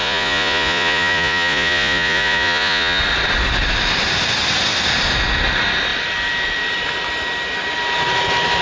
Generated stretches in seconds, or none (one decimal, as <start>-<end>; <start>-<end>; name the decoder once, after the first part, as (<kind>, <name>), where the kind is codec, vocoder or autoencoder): 0.0-3.0 (vocoder, Vocos)